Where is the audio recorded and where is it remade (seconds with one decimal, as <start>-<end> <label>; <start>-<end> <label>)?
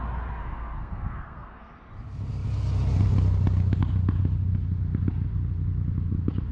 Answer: 0.0-0.4 recorded; 0.4-1.7 remade; 1.7-6.5 recorded